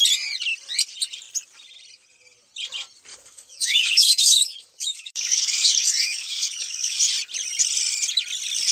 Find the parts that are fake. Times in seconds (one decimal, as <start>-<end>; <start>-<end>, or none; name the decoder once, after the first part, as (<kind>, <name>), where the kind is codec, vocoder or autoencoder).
3.1-7.0 (codec, DAC)